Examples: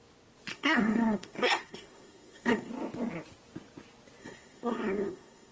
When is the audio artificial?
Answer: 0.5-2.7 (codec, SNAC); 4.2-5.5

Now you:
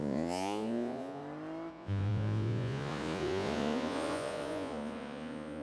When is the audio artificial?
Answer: 0.0-1.2 (vocoder, Vocos); 1.7-5.6

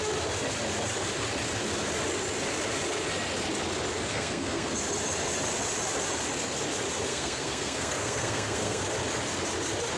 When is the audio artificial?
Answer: 4.1-4.7 (codec, SNAC); 7.1-8.8

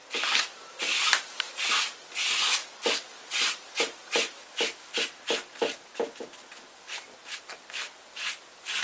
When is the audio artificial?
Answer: 2.6-7.4 (vocoder, BigVGAN v2)